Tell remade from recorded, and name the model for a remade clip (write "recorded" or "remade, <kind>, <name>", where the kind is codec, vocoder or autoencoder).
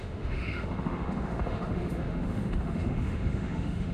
remade, autoencoder, DAC-VAE